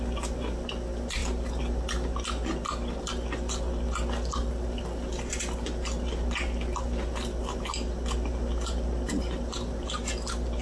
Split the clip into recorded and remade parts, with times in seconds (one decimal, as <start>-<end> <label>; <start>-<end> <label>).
0.0-10.6 recorded